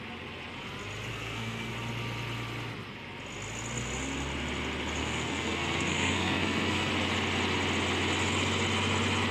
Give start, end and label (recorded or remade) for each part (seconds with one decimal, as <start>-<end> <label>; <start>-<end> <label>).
0.0-1.1 recorded; 1.1-1.7 remade; 1.7-5.0 recorded; 5.0-6.9 remade; 6.9-9.3 recorded